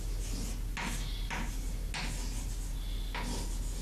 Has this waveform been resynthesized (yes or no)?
no